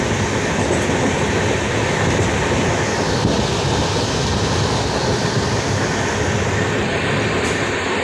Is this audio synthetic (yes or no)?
no